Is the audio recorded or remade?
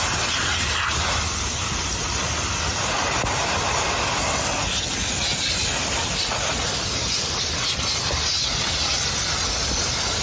recorded